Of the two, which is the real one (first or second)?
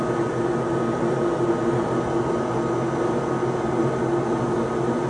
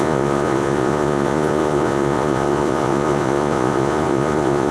first